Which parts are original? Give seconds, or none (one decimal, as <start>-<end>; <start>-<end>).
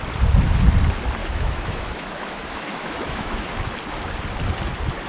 0.0-1.2; 3.5-5.1